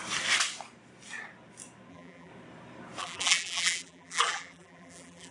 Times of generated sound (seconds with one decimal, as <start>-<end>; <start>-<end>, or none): 1.9-2.3; 3.0-5.3